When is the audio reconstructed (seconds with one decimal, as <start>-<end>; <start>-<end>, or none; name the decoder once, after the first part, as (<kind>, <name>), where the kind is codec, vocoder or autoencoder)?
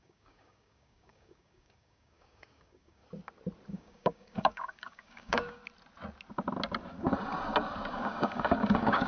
0.0-3.0 (codec, DAC); 3.7-5.6; 7.9-9.1